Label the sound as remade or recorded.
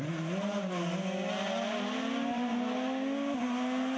recorded